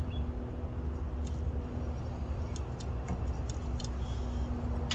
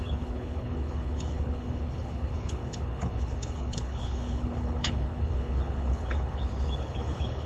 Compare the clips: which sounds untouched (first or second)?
first